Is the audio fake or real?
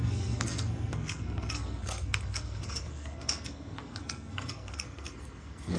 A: fake